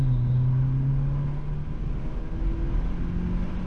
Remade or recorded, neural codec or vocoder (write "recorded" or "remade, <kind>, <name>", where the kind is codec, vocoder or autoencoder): recorded